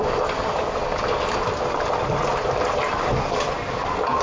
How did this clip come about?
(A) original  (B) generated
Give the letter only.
A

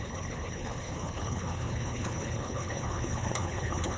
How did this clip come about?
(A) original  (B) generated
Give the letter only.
B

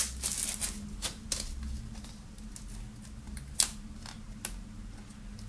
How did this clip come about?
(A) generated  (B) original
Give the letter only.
B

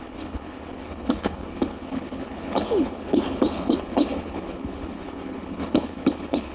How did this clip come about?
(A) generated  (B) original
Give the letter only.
A